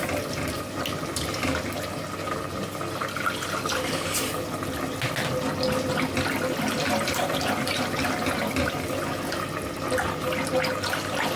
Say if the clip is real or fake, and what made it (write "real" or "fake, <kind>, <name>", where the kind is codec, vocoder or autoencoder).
real